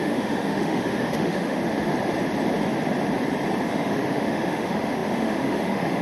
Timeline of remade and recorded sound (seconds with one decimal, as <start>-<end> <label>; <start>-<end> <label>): 0.0-1.6 remade; 1.6-3.7 recorded; 3.7-6.0 remade